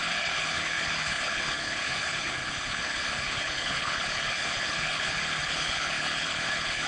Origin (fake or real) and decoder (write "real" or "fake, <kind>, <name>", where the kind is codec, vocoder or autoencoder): fake, codec, HILCodec